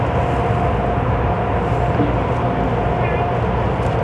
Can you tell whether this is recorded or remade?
recorded